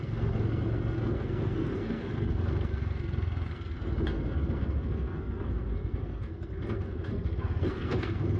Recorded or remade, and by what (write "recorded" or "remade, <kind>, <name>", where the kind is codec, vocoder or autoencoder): remade, codec, SNAC